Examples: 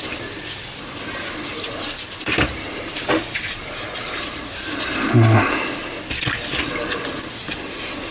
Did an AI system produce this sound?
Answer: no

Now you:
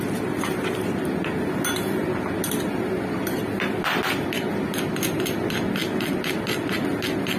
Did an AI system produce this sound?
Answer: no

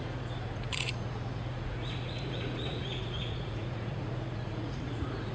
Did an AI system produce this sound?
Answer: yes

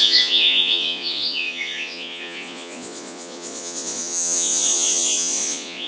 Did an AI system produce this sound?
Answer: yes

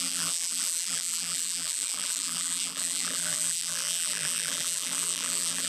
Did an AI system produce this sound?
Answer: yes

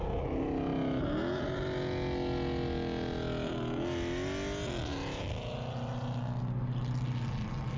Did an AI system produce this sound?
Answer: no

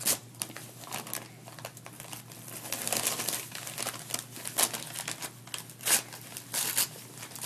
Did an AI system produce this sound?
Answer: no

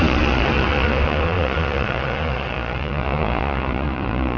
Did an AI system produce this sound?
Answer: yes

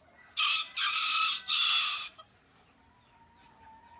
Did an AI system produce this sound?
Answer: no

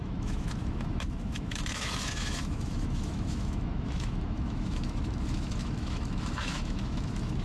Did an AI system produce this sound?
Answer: yes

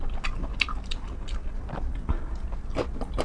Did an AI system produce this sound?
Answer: no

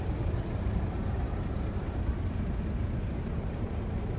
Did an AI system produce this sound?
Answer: yes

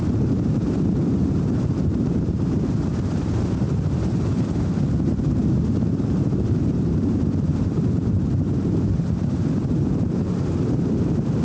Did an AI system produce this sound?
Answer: yes